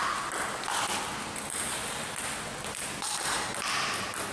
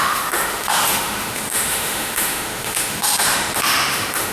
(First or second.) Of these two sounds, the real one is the first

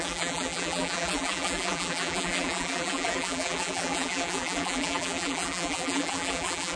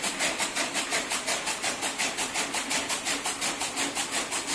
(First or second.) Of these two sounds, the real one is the second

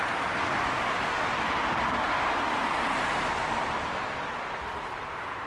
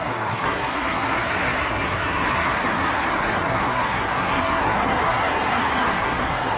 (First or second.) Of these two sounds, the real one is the first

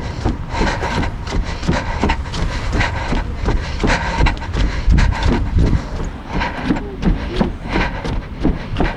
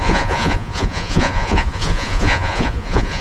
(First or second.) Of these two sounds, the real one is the first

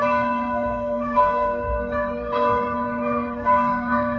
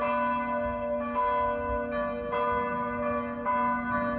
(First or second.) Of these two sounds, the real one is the second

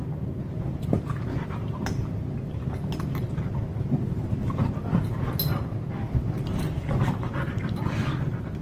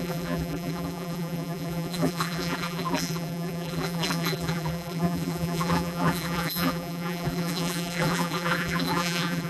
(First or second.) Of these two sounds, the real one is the first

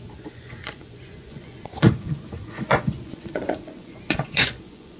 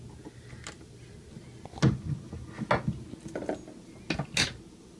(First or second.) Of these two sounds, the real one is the second